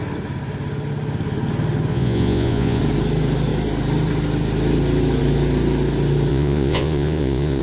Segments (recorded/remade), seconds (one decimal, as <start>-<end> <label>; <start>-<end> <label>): 0.0-1.9 recorded; 1.9-2.8 remade; 2.8-6.3 recorded; 6.3-7.6 remade